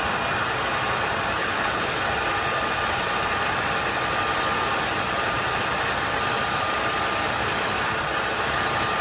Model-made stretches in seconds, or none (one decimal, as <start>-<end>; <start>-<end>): 1.4-2.0